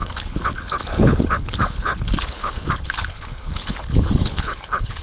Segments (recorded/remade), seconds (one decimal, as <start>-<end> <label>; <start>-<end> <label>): 0.0-5.0 remade